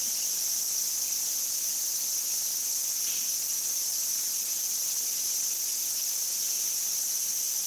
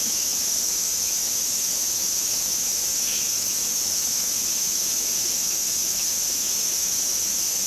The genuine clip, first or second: first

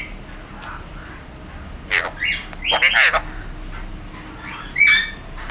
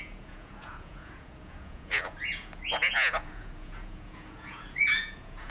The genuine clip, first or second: first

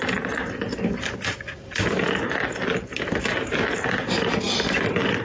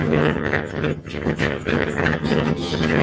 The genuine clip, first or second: first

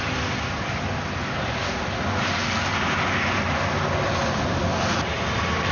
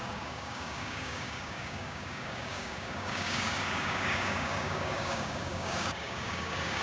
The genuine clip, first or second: first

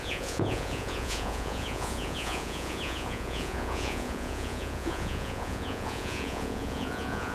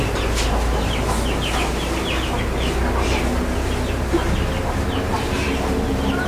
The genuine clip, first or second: second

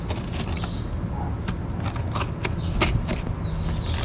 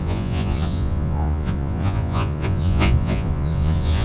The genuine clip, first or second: first